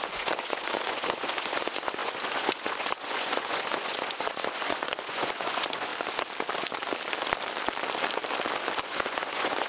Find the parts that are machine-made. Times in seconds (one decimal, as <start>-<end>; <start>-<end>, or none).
0.0-5.9; 8.8-9.7